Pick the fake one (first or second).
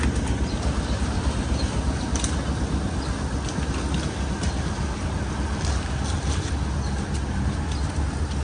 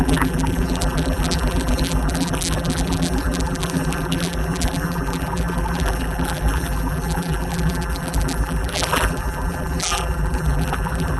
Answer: second